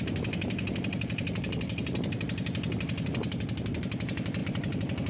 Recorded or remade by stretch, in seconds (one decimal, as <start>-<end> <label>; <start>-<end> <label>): 0.0-4.4 recorded; 4.4-5.1 remade